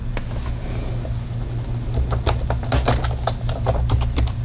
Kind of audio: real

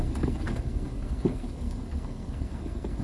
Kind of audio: fake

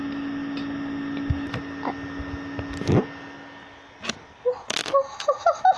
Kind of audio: real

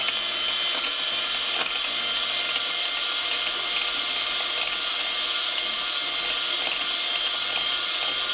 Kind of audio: real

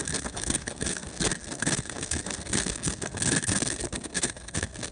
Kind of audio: fake